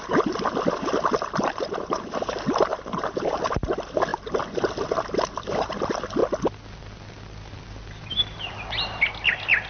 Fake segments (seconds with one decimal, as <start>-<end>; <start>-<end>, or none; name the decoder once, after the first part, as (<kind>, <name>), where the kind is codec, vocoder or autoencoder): none